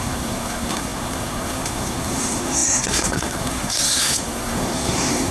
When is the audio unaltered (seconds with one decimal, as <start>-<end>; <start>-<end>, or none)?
none